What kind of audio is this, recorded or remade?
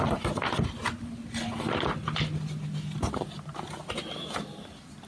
recorded